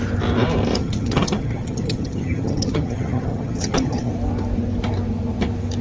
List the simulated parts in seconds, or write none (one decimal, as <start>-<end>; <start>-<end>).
0.8-4.1